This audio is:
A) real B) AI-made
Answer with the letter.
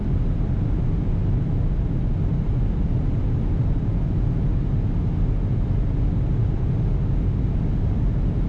A